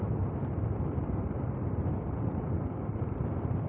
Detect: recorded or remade recorded